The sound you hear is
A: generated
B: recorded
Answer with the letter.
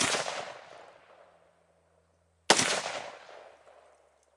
B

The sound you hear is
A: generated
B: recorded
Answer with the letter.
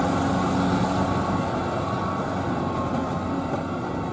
B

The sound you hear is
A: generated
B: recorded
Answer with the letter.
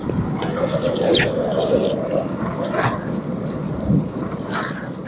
B